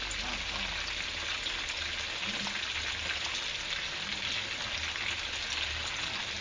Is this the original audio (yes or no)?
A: yes